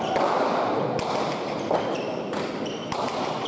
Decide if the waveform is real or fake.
real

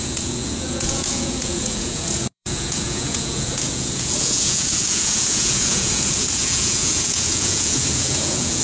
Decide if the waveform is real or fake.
fake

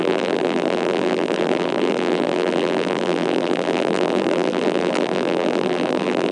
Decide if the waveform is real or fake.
fake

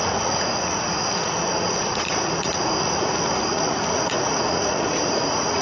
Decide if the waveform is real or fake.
fake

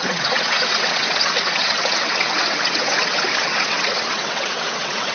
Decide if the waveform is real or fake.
fake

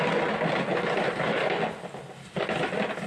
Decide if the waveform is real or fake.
real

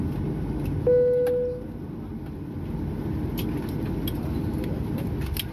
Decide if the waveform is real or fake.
real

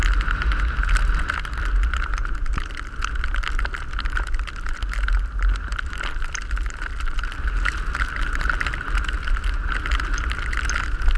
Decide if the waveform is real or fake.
real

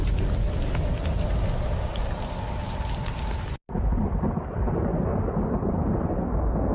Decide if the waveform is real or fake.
real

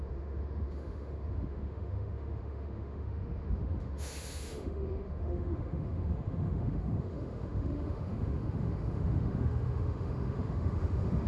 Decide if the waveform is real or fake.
fake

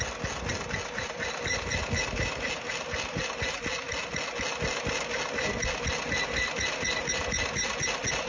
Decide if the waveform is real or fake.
real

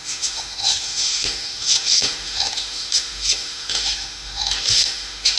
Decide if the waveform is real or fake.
fake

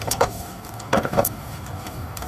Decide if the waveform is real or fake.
fake